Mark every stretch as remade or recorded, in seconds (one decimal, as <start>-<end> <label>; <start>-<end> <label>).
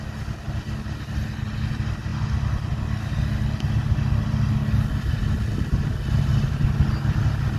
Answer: 0.0-7.6 recorded